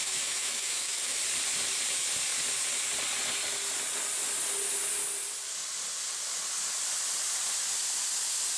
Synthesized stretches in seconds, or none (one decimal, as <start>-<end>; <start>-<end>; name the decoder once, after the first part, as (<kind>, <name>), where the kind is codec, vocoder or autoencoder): 0.0-1.2 (autoencoder, DAC-VAE)